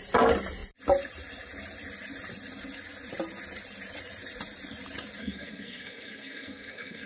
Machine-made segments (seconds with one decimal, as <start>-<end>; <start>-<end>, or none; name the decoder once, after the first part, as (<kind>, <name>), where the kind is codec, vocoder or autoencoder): 5.2-7.1 (codec, SNAC)